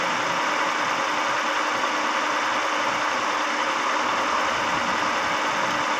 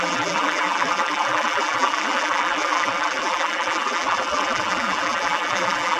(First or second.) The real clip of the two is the first